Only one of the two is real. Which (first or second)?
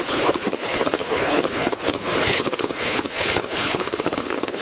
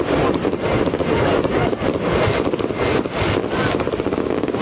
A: second